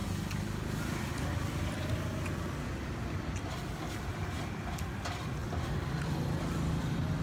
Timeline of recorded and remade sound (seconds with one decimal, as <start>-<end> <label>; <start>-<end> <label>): 0.0-7.2 recorded